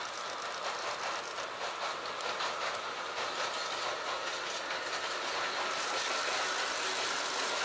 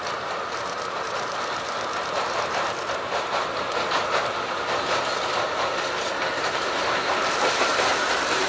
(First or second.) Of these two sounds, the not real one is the second